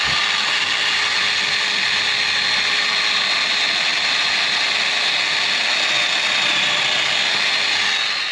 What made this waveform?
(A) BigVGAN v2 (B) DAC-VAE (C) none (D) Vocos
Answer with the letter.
C